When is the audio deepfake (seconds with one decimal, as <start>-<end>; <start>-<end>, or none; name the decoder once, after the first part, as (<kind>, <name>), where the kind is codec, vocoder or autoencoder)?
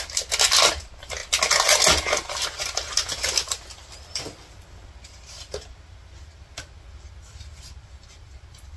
none